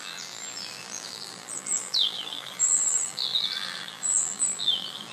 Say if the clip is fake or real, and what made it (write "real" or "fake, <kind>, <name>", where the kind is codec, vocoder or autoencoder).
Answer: fake, vocoder, BigVGAN v2